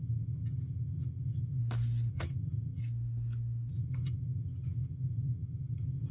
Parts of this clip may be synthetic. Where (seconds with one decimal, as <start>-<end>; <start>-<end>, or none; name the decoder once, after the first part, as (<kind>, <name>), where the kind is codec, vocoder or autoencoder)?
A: 0.0-1.6 (vocoder, HiFi-GAN); 2.1-2.8; 3.7-6.1